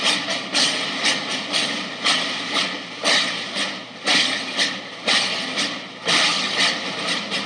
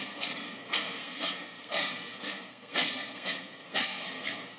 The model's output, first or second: second